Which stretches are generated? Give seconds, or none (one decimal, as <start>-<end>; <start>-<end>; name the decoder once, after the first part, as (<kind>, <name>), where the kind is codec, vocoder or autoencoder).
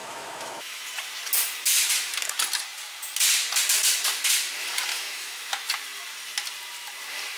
0.0-0.8 (autoencoder, DAC-VAE); 4.9-5.5